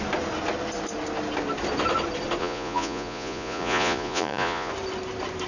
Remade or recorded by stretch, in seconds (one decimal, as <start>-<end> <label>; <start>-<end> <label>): 0.0-2.4 recorded; 2.4-4.7 remade; 4.7-5.5 recorded